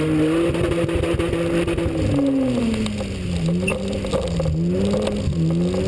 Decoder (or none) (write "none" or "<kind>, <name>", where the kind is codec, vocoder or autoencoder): none